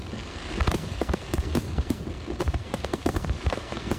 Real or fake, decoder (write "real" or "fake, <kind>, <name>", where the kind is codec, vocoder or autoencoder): fake, codec, SNAC